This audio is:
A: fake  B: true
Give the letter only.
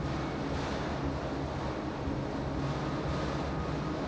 B